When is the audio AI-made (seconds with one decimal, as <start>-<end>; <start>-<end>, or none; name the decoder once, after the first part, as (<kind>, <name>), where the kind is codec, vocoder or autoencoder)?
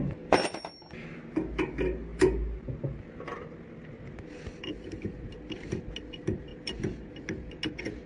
none